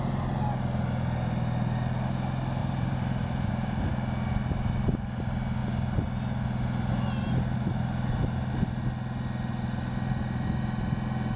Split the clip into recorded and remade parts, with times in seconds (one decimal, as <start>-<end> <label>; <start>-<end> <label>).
0.0-2.6 recorded; 2.6-3.9 remade; 3.9-11.4 recorded